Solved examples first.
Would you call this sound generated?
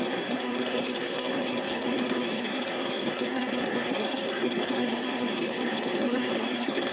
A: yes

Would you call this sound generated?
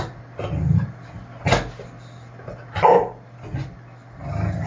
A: no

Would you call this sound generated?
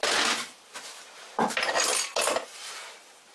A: no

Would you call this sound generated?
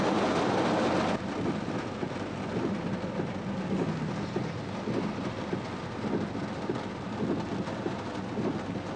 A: no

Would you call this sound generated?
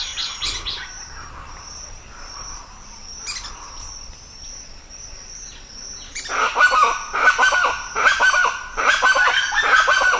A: yes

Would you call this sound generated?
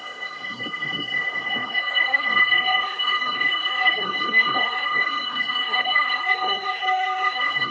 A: yes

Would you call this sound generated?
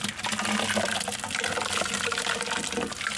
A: no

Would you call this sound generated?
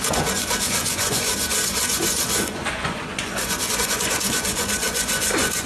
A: yes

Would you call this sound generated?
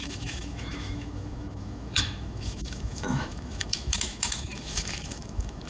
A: yes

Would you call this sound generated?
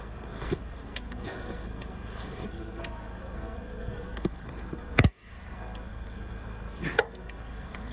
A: yes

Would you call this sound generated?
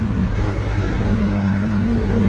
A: yes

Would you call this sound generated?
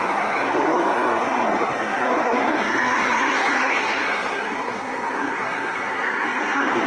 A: yes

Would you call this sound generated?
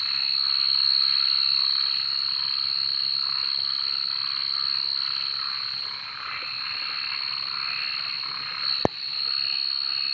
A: no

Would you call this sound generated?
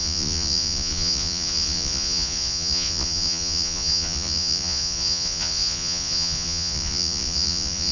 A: yes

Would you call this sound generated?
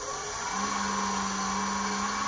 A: no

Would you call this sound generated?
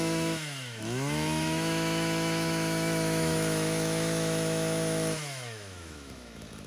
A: yes